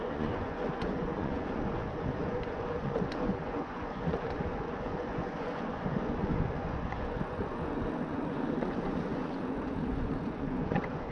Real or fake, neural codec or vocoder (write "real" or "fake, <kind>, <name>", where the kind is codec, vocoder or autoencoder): fake, vocoder, Vocos